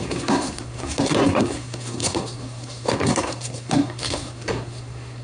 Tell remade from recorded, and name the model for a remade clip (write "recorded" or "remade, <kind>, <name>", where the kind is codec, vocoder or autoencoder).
remade, codec, SNAC